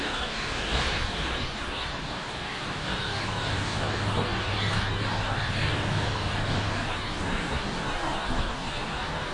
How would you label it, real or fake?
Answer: fake